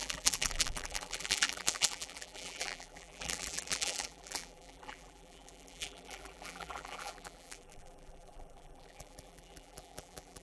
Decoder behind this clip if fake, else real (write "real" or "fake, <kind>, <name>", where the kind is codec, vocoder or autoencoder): fake, vocoder, BigVGAN v2